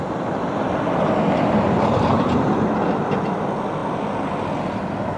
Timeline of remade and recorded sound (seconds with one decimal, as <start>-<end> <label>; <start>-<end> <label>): 0.0-3.1 remade; 3.1-5.2 recorded